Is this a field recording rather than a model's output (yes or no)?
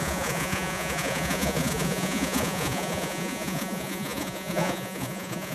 no